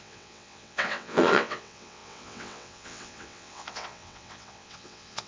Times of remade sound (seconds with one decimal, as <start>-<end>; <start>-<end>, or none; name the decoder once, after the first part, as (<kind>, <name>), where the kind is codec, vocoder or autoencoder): 0.0-5.3 (vocoder, WaveNeXt)